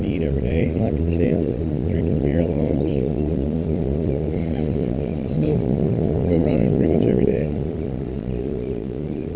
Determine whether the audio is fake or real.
fake